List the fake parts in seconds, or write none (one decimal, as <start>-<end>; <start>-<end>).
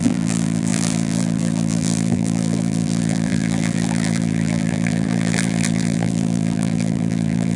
0.0-7.6